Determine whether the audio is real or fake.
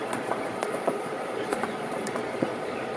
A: fake